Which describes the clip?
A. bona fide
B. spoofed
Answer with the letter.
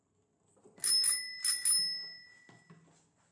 A